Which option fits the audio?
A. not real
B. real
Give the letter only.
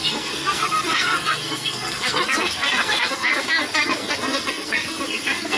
A